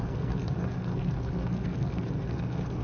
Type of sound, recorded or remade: remade